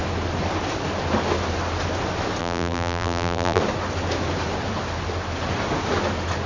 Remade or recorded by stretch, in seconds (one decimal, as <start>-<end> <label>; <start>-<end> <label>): 0.0-2.4 recorded; 2.4-3.6 remade; 3.6-6.5 recorded